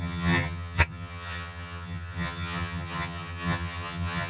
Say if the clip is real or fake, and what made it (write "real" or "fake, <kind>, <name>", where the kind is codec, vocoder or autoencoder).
fake, vocoder, HiFi-GAN